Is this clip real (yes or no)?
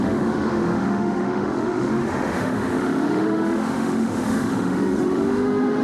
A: no